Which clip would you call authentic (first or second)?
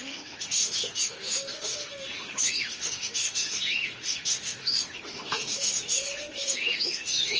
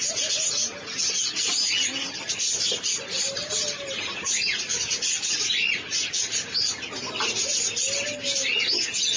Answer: second